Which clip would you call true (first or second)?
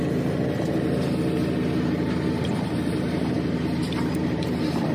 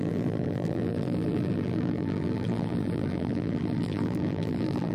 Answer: first